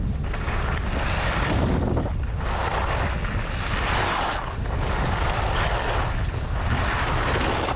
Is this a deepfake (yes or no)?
no